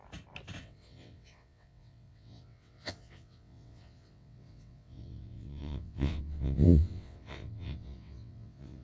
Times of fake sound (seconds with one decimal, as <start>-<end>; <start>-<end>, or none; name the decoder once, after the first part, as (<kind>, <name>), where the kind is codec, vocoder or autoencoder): 0.6-8.8 (vocoder, WaveNeXt)